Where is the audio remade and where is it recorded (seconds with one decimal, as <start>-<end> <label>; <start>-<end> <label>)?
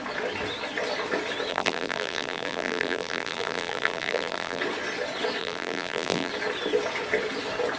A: 0.0-1.5 recorded; 1.5-4.6 remade; 4.6-5.4 recorded; 5.4-6.3 remade; 6.3-7.8 recorded